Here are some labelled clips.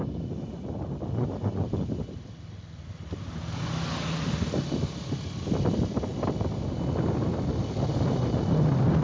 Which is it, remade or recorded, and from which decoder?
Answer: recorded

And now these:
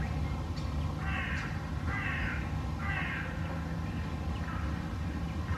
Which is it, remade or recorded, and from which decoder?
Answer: recorded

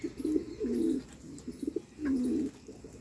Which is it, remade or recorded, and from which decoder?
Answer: recorded